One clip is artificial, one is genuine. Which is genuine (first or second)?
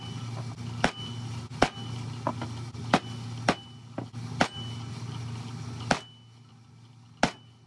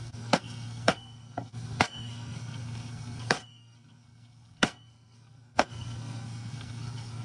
first